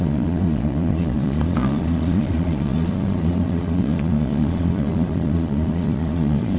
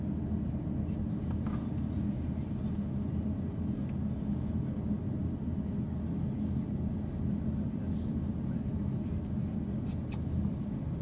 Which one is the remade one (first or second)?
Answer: first